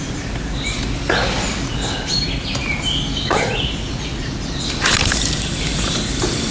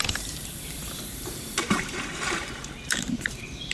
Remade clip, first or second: second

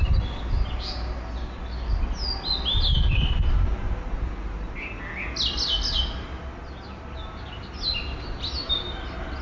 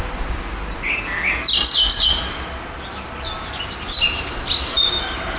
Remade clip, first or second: second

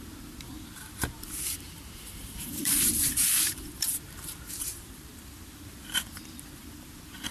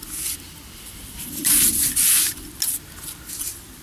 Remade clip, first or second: first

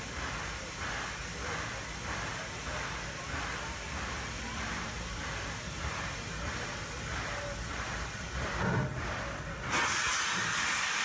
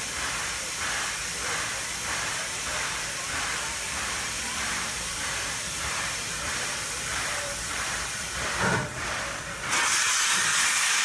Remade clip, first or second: second